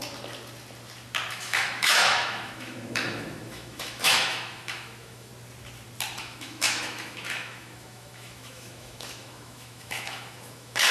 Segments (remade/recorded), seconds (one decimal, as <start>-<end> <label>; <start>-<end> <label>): 0.0-1.3 recorded; 1.3-5.3 remade; 5.3-6.2 recorded; 6.2-10.9 remade